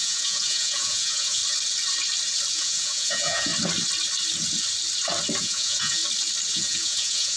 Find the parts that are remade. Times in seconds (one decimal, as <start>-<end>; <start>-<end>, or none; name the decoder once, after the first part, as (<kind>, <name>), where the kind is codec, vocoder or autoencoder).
0.0-1.4 (vocoder, Vocos); 2.5-3.5; 5.4-6.0; 6.5-7.4